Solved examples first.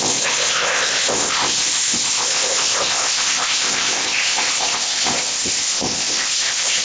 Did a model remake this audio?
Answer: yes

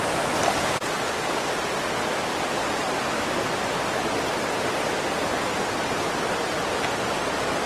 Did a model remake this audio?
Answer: no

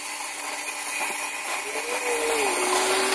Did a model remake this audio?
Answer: no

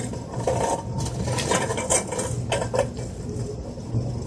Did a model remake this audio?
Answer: no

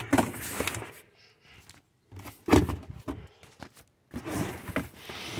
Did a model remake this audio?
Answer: no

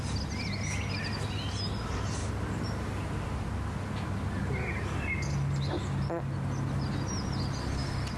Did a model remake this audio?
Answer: no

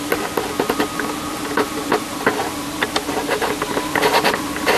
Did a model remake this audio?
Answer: no